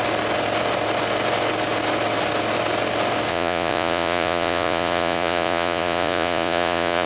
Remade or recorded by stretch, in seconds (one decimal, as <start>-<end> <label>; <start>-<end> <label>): 0.0-3.3 recorded; 3.3-7.1 remade